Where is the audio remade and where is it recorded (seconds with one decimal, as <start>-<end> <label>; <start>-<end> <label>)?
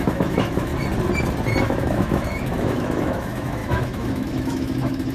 0.0-0.7 remade; 0.7-1.6 recorded; 1.6-5.1 remade